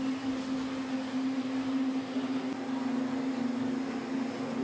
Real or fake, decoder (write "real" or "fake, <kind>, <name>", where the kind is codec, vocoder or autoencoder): real